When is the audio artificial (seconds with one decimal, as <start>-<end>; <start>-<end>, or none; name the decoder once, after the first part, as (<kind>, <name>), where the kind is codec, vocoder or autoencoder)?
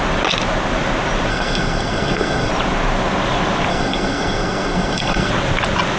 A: 1.3-2.5 (codec, SNAC); 3.7-5.3